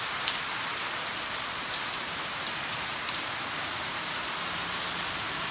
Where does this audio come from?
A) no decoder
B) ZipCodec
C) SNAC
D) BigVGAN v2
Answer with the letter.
D